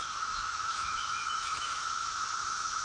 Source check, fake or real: fake